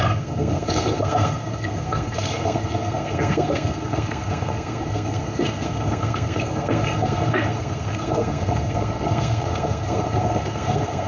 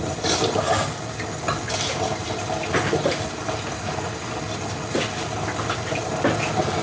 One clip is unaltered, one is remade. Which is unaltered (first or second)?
second